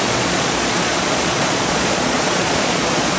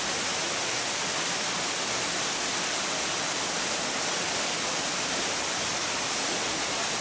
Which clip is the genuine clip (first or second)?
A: second